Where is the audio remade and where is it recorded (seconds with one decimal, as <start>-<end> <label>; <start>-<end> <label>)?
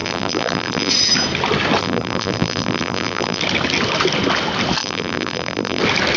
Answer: 0.0-0.9 remade; 0.9-1.8 recorded; 1.8-3.4 remade; 3.4-4.8 recorded; 4.8-5.8 remade; 5.8-6.2 recorded